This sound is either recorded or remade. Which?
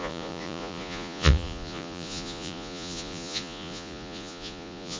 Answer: remade